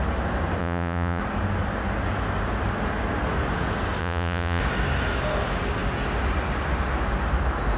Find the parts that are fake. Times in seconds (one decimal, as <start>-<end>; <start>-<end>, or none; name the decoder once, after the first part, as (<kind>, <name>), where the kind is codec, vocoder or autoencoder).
0.6-1.2 (vocoder, Vocos); 4.0-4.6